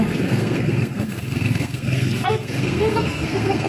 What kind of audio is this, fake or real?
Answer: fake